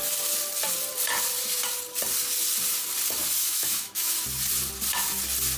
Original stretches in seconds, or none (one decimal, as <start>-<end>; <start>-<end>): 0.0-3.4; 4.2-5.6